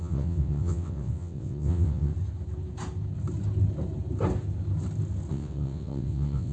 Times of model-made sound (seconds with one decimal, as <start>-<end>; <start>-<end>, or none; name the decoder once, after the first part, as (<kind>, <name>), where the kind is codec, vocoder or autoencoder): 0.0-2.1 (vocoder, WaveNeXt); 5.3-6.5